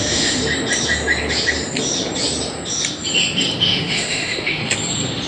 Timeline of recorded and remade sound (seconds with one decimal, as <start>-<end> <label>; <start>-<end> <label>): 0.0-0.4 remade; 0.4-3.6 recorded; 3.6-4.6 remade; 4.6-5.3 recorded